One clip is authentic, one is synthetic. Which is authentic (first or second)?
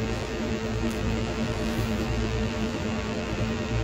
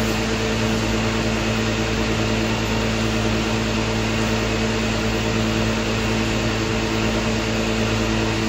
second